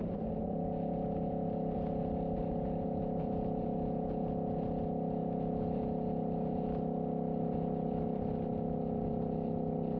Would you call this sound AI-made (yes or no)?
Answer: no